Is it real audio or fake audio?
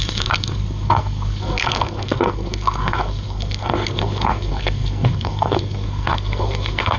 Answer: fake